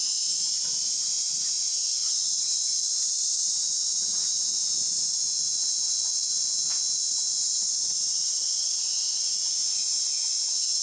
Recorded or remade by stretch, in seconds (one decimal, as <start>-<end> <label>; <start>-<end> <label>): 0.0-2.0 recorded; 2.0-2.6 remade; 2.6-8.2 recorded; 8.2-9.2 remade; 9.2-10.8 recorded